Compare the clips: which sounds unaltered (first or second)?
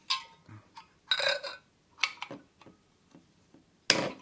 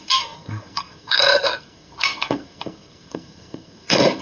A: first